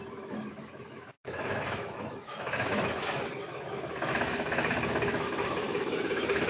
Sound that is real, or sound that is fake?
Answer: fake